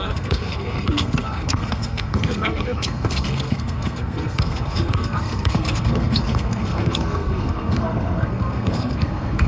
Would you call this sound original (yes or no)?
no